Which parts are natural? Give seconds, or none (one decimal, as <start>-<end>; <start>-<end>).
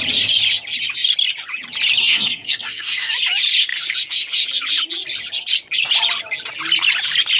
0.0-2.0; 3.1-7.4